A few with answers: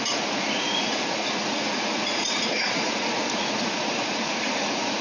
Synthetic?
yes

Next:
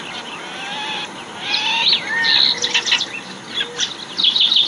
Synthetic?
no